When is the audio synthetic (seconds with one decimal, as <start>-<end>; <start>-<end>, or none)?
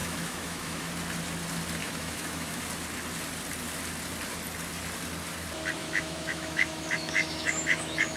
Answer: 0.0-0.9; 1.8-2.6; 5.8-8.2